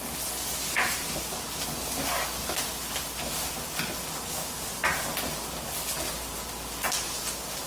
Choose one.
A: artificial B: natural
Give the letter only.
B